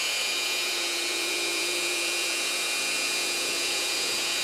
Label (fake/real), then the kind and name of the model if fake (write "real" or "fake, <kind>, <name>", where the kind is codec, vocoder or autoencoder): fake, vocoder, Vocos